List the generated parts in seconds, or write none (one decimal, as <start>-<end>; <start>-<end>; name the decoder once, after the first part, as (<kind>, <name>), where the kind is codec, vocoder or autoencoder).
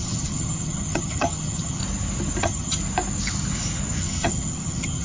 0.0-1.8 (vocoder, HiFi-GAN); 2.4-2.8; 4.0-5.0